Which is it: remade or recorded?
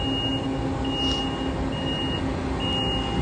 recorded